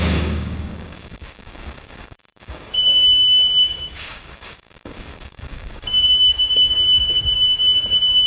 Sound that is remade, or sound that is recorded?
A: remade